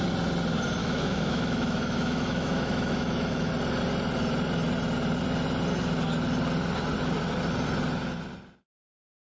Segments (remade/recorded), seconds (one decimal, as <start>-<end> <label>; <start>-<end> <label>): 0.0-0.8 recorded; 0.8-3.5 remade; 3.5-9.3 recorded